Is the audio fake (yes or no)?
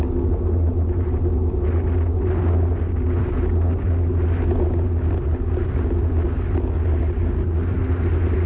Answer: no